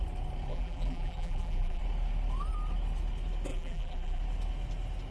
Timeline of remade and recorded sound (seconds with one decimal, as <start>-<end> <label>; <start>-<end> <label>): 0.0-0.5 recorded; 0.5-1.8 remade; 1.8-3.5 recorded; 3.5-4.2 remade; 4.2-5.1 recorded